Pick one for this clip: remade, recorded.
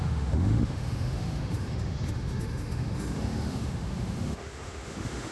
remade